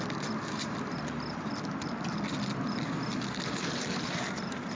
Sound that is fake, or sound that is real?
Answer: real